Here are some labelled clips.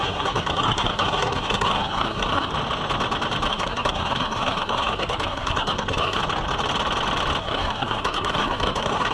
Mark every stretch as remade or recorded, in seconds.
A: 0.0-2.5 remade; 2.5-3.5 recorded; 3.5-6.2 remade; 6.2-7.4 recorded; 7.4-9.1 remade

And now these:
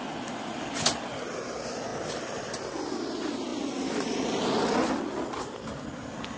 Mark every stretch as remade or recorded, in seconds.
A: 0.0-6.4 recorded

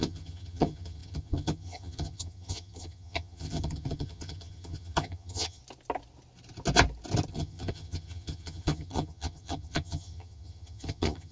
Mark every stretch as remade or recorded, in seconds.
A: 0.0-5.6 remade; 5.6-7.3 recorded; 7.3-11.3 remade

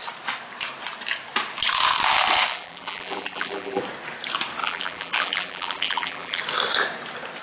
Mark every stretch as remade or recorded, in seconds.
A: 0.0-2.5 recorded; 2.5-3.8 remade; 3.8-4.6 recorded; 4.6-6.4 remade; 6.4-7.4 recorded

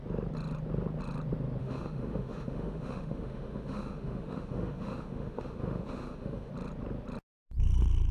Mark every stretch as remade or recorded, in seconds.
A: 0.0-1.6 recorded; 1.6-6.5 remade; 6.5-8.1 recorded

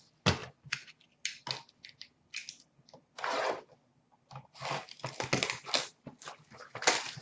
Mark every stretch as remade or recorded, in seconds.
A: 0.0-7.2 recorded

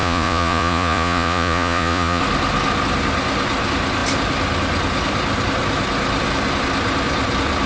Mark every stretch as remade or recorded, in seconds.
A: 0.0-2.2 remade; 2.2-7.7 recorded